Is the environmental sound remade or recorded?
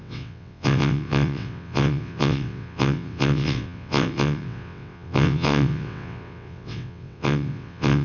remade